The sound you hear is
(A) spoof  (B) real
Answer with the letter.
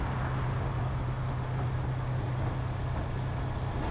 B